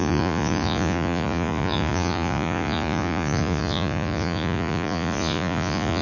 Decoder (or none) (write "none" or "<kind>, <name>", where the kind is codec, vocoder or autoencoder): vocoder, Vocos